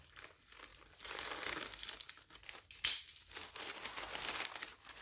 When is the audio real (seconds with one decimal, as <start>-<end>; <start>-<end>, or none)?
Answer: 0.0-5.0